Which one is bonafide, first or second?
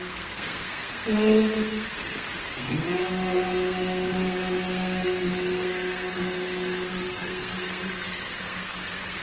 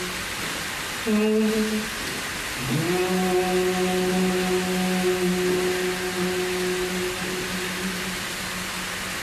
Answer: second